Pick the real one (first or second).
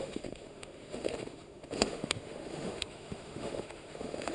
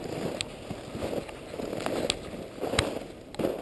second